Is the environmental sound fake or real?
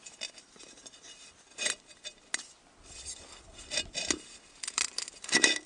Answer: real